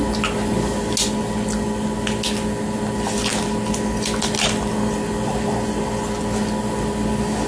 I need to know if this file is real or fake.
real